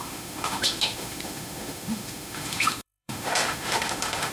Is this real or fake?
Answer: fake